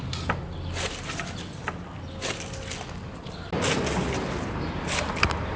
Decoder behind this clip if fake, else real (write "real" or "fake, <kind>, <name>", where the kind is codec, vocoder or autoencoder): real